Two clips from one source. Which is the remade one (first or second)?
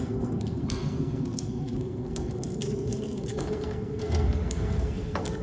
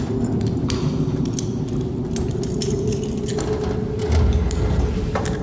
first